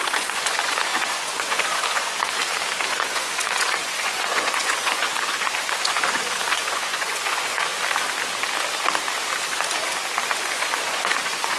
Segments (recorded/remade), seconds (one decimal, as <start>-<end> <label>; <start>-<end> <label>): 0.0-2.4 remade; 2.4-2.9 recorded; 2.9-7.7 remade; 7.7-10.2 recorded; 10.2-11.6 remade